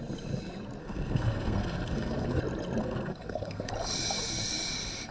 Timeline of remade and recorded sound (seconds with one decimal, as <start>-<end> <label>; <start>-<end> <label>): 0.0-0.8 recorded; 0.8-2.4 remade; 2.4-2.8 recorded; 2.8-3.7 remade; 3.7-5.1 recorded